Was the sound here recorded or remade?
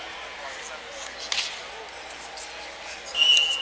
recorded